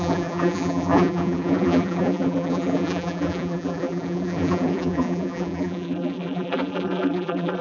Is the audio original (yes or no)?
no